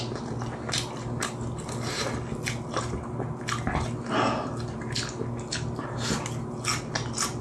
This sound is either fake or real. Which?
real